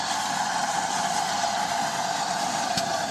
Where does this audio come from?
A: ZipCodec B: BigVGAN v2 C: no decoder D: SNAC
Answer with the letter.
B